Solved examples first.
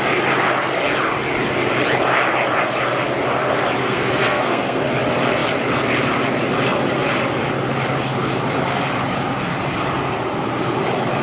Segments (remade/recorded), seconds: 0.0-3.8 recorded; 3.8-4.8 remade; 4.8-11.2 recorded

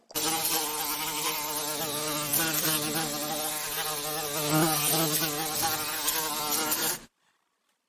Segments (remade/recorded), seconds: 0.0-7.9 recorded

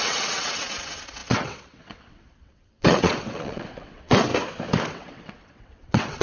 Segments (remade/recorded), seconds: 0.0-4.3 remade; 4.3-4.9 recorded; 4.9-6.2 remade

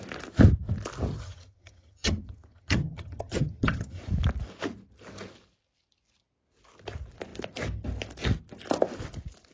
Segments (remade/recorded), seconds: 0.0-1.1 recorded; 1.1-4.0 remade; 4.0-9.5 recorded

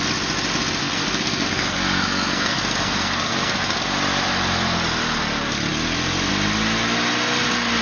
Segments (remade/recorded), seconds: 0.0-0.8 recorded; 0.8-3.8 remade; 3.8-7.8 recorded

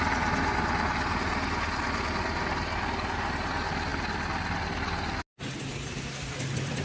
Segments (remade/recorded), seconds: 0.0-6.8 recorded